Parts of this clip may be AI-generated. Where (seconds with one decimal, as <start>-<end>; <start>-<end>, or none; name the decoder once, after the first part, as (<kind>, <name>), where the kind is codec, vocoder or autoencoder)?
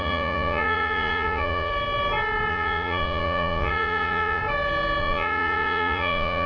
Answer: 0.0-1.7 (vocoder, Vocos); 2.5-4.4; 5.0-6.5